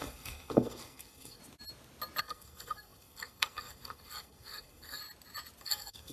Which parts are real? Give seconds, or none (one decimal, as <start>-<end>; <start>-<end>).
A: 1.4-2.2; 5.0-5.6

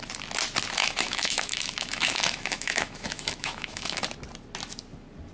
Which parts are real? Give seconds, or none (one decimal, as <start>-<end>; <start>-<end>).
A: 0.0-0.8; 4.0-5.3

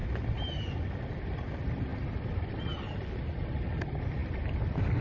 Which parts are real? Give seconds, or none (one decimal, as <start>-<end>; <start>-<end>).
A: 0.0-5.0

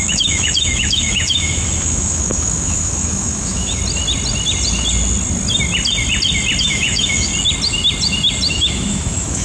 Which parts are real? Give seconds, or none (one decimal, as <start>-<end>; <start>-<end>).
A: 3.8-6.6; 7.3-8.5

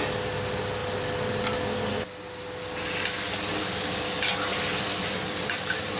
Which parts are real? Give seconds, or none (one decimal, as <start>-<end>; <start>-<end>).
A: 0.0-6.0

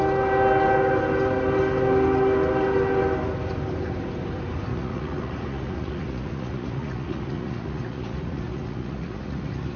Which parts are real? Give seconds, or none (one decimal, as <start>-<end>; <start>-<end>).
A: 0.0-4.7

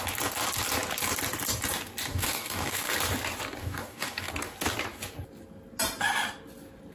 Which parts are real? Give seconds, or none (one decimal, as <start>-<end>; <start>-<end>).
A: 0.0-2.1; 2.9-3.6; 4.3-6.9

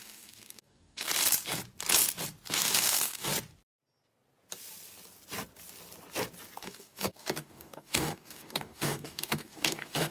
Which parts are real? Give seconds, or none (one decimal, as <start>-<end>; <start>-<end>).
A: 1.1-2.5; 3.3-6.6